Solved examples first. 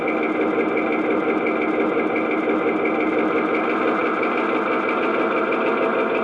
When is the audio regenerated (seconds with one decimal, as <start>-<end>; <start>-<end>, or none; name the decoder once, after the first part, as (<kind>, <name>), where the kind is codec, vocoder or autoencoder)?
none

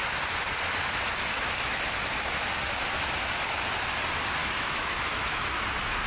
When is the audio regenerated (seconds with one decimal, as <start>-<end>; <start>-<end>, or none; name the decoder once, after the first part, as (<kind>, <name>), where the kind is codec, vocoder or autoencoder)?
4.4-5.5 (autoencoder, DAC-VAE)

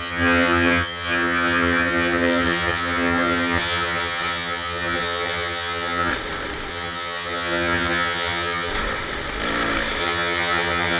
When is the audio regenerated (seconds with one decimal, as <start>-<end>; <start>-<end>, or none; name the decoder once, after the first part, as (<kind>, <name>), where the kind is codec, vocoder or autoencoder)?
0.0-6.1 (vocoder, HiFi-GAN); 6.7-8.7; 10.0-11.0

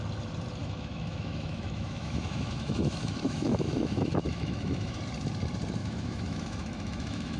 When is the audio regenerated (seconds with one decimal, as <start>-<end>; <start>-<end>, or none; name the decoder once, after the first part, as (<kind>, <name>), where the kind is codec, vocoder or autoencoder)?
0.6-5.0 (autoencoder, DAC-VAE); 5.8-7.4